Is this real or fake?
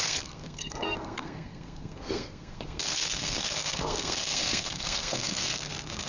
fake